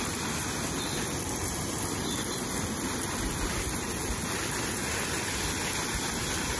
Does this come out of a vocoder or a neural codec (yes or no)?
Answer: no